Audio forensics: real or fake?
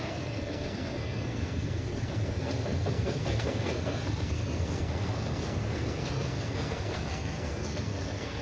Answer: fake